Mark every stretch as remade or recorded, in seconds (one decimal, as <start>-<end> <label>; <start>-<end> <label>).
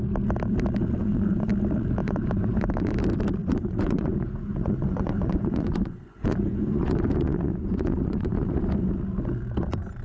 0.0-1.0 recorded; 1.0-1.5 remade; 1.5-2.0 recorded; 2.0-2.9 remade; 2.9-3.4 recorded; 3.4-8.6 remade; 8.6-10.0 recorded